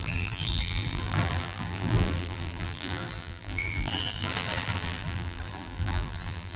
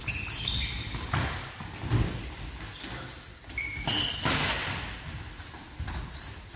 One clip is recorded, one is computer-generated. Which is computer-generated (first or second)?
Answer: first